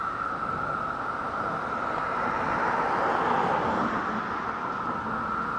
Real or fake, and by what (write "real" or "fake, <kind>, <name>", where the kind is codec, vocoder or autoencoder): real